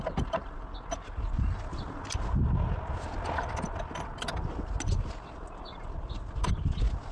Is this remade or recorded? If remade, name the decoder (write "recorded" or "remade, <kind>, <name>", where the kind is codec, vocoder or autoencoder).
recorded